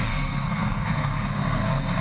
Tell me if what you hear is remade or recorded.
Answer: remade